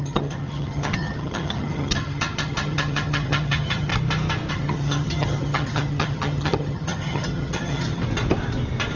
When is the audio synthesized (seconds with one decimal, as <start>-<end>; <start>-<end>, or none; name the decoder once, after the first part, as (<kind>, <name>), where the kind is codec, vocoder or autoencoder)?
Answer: 0.0-3.9 (vocoder, HiFi-GAN); 4.5-8.0